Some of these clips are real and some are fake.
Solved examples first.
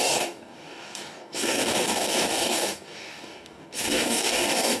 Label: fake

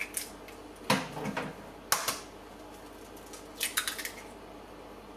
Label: real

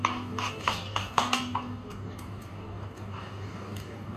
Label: fake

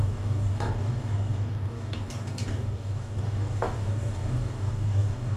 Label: fake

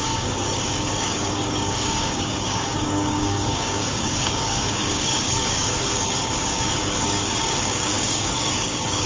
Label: fake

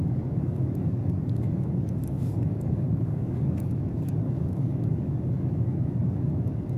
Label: fake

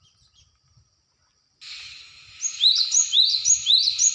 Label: real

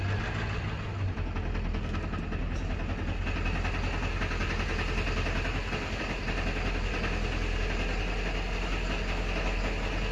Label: real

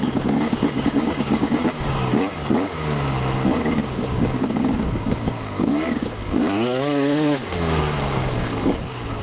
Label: fake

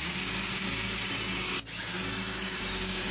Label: fake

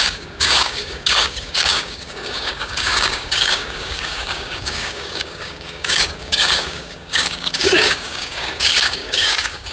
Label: fake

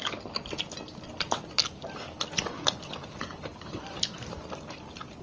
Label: real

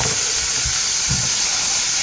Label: real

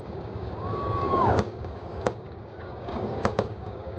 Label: fake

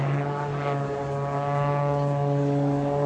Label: fake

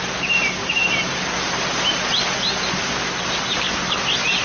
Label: real